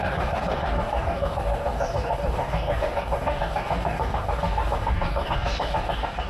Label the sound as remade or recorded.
remade